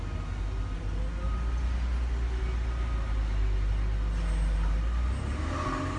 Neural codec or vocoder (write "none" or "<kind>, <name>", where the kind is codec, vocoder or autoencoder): none